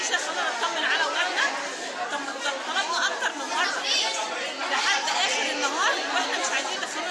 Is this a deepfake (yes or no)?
no